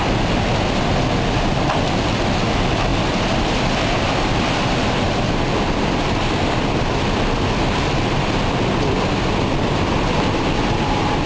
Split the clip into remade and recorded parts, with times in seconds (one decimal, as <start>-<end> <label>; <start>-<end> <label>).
0.0-11.3 recorded